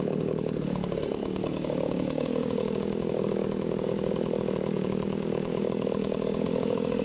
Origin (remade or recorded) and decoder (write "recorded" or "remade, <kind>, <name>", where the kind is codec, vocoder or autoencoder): remade, codec, DAC